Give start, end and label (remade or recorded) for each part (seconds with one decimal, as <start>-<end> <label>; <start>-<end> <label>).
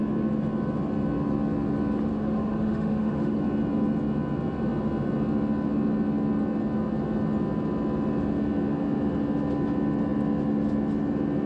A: 0.0-2.1 recorded; 2.1-3.4 remade; 3.4-11.5 recorded